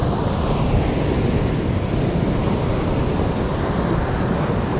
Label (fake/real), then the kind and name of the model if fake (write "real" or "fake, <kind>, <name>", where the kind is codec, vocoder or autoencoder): real